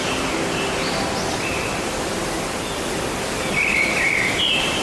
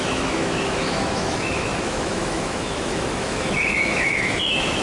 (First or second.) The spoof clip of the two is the second